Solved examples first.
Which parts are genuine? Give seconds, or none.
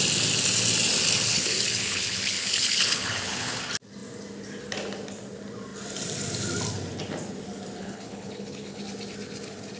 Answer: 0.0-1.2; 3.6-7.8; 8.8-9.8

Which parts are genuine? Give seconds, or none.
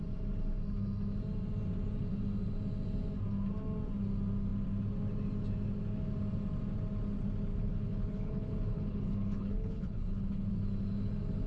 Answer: 0.0-7.5; 10.5-11.5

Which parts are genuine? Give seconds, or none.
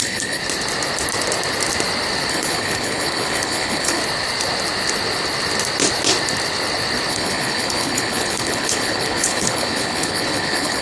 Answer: 0.4-2.3; 4.0-7.1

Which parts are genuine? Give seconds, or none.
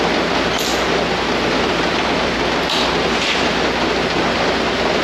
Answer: 0.0-5.0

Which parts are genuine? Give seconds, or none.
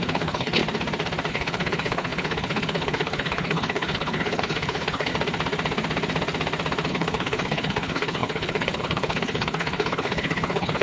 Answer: 0.6-1.3; 5.1-6.9